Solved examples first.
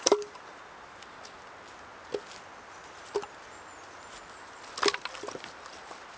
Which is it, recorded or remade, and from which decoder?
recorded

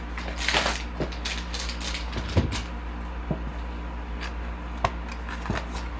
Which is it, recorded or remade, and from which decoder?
recorded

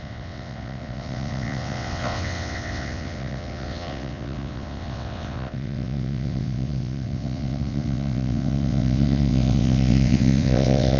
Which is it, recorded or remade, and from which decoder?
remade, vocoder, WaveNeXt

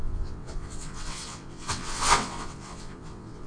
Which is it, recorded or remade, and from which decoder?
remade, vocoder, WaveNeXt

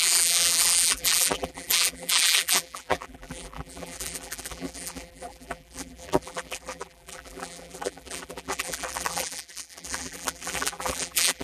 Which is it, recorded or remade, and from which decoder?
remade, vocoder, BigVGAN v2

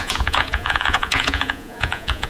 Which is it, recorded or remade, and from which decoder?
remade, vocoder, Vocos